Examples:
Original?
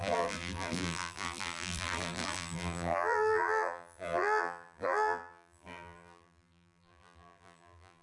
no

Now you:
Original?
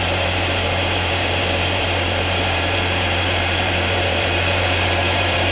no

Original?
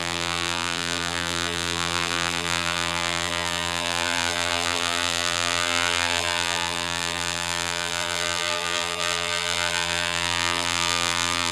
no